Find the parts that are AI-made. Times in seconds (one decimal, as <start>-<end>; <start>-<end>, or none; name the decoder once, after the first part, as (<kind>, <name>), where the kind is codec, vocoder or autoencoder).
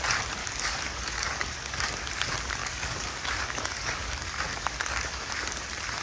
0.4-2.1 (codec, DAC); 2.6-5.3